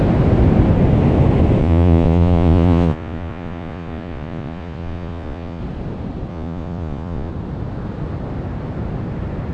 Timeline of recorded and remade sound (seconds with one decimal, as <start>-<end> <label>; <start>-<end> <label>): 0.0-1.6 recorded; 1.6-5.6 remade; 5.6-6.3 recorded; 6.3-7.3 remade; 7.3-9.5 recorded